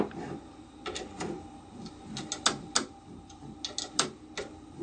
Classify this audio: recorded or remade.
recorded